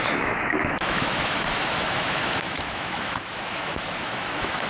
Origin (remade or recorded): remade